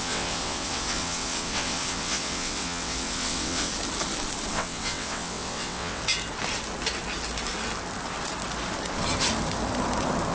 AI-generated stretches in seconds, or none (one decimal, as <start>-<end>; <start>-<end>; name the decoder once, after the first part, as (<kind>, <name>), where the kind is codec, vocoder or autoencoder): 0.0-3.7 (vocoder, WaveNeXt); 4.5-6.0